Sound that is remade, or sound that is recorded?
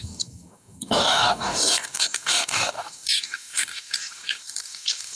remade